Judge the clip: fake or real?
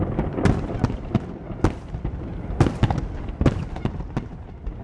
real